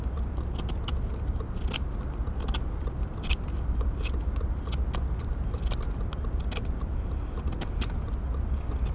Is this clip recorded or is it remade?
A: recorded